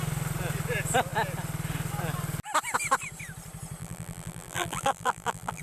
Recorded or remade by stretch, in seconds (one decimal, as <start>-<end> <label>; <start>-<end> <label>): 0.0-3.8 recorded; 3.8-5.6 remade